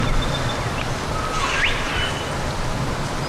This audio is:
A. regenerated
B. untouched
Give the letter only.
B